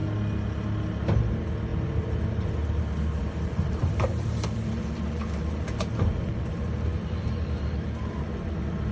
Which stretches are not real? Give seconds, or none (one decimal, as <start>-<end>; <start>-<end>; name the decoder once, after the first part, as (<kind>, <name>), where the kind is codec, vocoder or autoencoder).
1.7-2.5 (vocoder, BigVGAN v2); 3.2-8.5